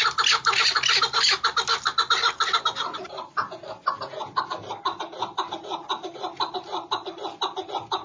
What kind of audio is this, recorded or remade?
recorded